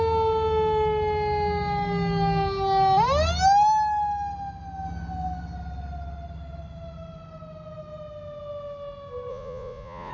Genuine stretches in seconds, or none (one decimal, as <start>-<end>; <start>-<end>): 0.0-9.3